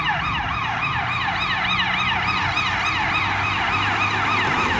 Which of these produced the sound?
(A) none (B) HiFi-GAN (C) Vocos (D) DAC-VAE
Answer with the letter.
A